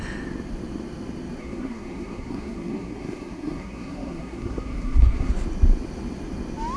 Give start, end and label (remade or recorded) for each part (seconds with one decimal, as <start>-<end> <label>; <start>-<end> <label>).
0.0-1.4 recorded; 1.4-5.3 remade; 5.3-6.8 recorded